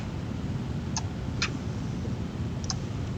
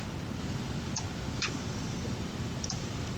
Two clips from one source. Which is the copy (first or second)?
second